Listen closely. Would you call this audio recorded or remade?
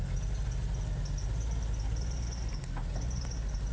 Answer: recorded